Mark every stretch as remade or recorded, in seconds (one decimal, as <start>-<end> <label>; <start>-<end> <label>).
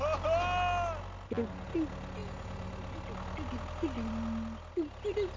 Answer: 0.0-5.4 recorded